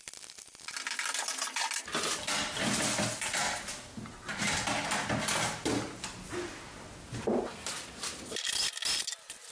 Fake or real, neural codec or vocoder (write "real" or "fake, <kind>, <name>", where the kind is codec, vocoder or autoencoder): real